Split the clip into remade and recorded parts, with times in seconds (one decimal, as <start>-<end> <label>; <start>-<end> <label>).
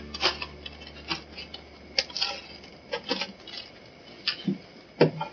0.0-5.3 recorded